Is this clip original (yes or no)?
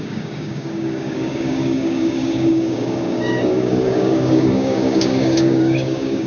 no